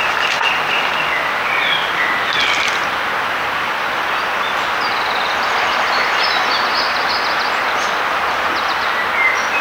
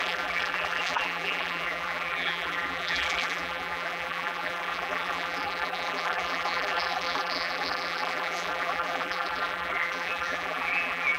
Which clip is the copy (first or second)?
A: second